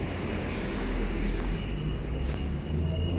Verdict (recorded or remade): remade